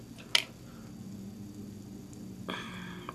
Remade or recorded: recorded